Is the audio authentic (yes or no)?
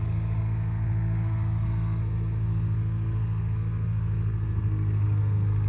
no